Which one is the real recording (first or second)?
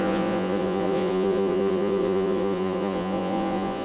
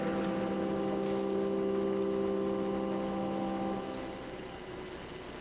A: second